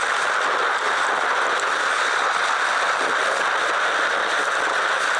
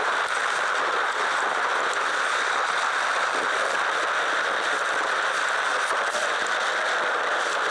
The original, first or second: first